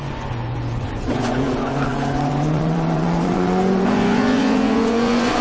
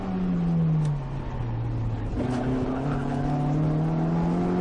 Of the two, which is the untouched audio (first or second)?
second